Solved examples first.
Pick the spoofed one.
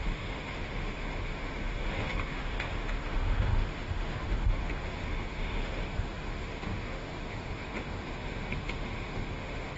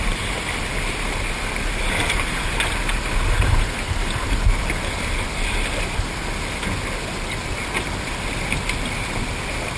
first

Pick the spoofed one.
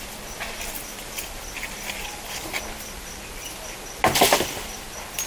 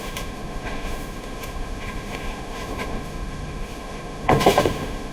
second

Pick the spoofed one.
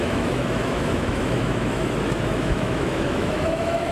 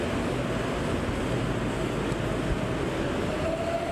first